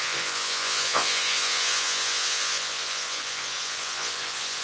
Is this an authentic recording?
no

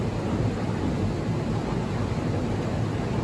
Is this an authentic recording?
yes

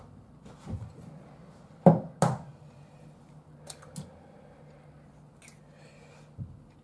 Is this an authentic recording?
yes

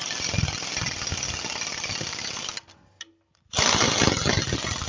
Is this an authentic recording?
yes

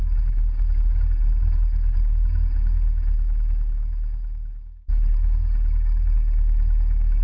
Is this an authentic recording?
no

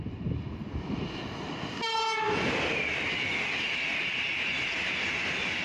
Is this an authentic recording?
yes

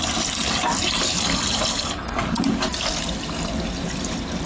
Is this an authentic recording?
yes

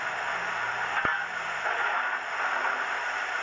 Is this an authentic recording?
yes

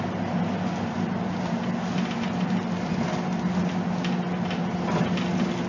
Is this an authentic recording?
yes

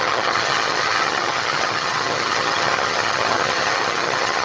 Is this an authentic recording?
no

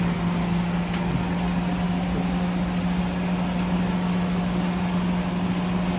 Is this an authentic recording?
yes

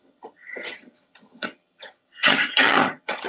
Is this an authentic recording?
no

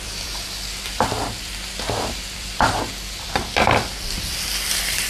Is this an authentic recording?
no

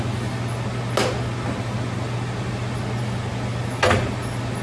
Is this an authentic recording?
yes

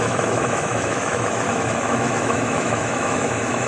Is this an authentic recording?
no